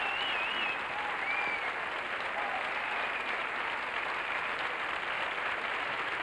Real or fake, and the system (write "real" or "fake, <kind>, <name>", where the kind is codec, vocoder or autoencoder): real